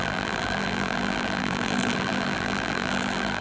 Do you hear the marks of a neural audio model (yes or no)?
yes